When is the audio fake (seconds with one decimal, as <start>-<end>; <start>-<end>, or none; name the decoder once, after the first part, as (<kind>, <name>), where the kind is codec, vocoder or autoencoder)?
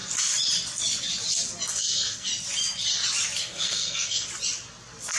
1.7-2.3 (codec, SNAC); 3.4-4.3